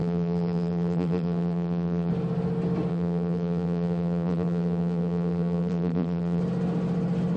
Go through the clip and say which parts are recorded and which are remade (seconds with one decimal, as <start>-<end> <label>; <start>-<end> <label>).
0.0-2.1 remade; 2.1-2.9 recorded; 2.9-6.4 remade; 6.4-7.4 recorded